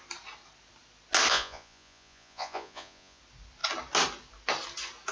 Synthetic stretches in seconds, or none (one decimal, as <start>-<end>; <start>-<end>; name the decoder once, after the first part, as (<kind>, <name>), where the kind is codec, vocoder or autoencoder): 1.3-3.2 (vocoder, Vocos)